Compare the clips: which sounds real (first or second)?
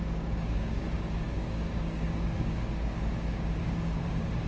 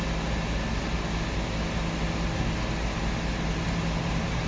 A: second